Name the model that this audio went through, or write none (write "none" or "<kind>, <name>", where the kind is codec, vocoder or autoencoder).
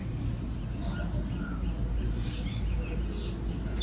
none